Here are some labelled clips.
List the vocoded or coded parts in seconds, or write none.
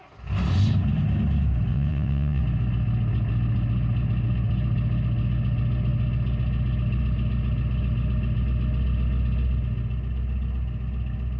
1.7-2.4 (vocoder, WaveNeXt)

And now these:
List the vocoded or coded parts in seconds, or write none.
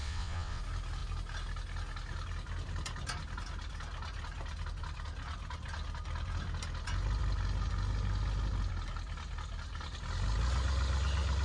0.0-0.6 (vocoder, WaveNeXt)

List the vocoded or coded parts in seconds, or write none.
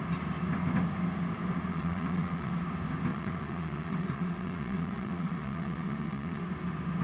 1.7-2.5 (vocoder, WaveNeXt); 3.1-6.4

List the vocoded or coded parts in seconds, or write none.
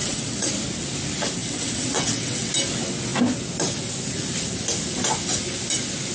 0.0-0.5 (vocoder, WaveNeXt); 1.4-2.5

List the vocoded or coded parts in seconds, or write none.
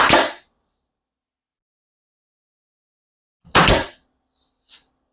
none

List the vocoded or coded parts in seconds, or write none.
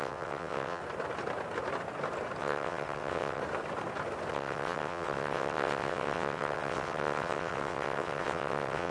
0.0-0.8 (vocoder, WaveNeXt); 2.4-3.4; 4.3-8.9